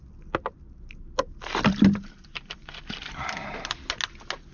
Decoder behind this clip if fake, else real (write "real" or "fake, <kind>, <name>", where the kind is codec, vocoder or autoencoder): real